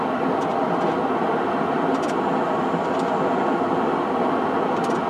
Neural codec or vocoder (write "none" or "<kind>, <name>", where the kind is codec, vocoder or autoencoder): none